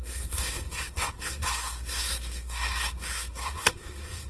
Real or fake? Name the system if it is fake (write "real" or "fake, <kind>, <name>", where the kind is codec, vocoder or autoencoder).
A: fake, codec, SNAC